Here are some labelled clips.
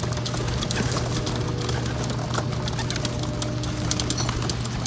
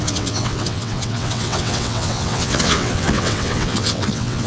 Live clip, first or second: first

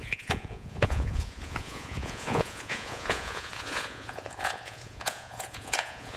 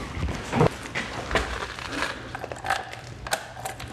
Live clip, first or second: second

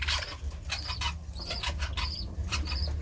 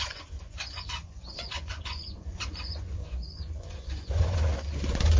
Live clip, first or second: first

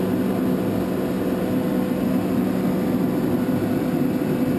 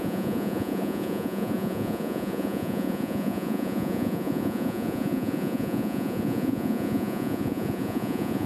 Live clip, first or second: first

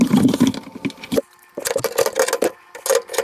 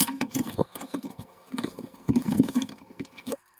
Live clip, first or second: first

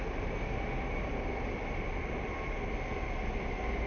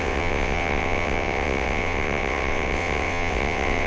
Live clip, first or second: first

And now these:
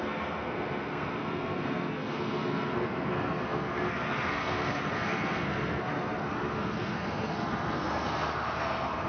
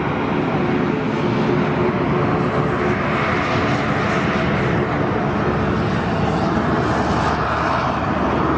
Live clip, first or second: second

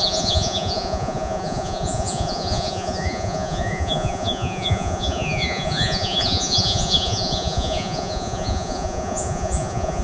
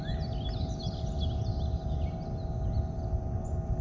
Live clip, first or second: second